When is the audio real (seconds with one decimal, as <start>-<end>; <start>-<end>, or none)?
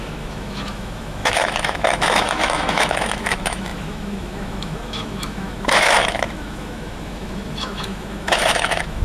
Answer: none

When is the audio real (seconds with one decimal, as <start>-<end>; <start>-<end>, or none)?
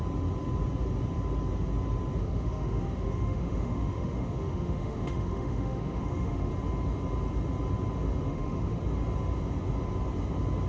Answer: 0.0-2.2; 6.5-8.3; 8.8-10.7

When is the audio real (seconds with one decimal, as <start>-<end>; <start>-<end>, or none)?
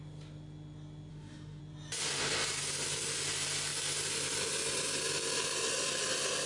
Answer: 0.0-1.1; 1.6-6.5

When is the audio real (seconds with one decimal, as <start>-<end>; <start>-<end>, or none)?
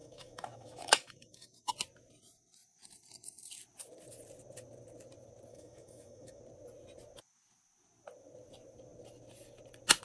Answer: 1.7-5.5; 6.4-10.0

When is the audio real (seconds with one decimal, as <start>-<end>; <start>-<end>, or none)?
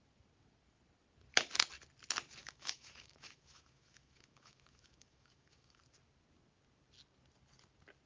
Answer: 0.0-2.4; 5.8-8.1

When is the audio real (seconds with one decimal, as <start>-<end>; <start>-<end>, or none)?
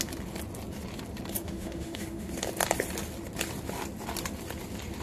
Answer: 0.0-1.4; 2.3-5.0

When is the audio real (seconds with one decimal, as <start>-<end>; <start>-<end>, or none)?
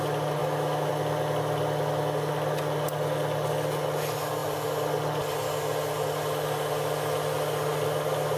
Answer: 0.0-0.4; 0.9-8.4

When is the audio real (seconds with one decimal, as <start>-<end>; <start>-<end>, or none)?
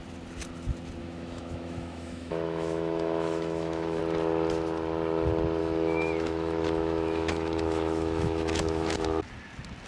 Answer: 0.0-1.0; 4.0-5.6; 9.2-9.9